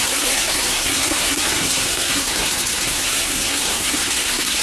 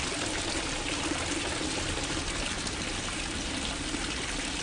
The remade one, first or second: first